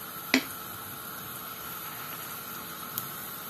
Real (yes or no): yes